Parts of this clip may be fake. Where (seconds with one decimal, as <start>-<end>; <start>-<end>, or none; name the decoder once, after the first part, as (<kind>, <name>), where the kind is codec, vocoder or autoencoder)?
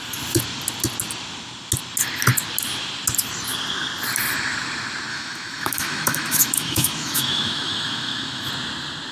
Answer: 5.1-8.5 (autoencoder, DAC-VAE)